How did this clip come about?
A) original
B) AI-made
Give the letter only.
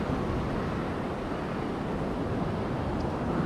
A